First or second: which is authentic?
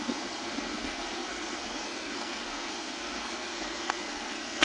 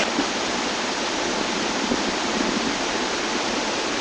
second